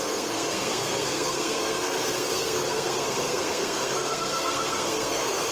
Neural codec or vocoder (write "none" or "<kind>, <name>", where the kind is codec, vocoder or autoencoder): codec, SNAC